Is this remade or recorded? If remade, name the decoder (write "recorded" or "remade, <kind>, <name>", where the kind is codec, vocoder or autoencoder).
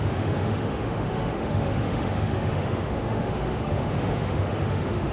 remade, autoencoder, DAC-VAE